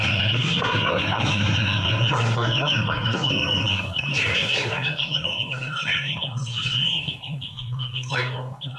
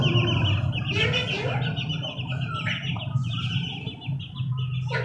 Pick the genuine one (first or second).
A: second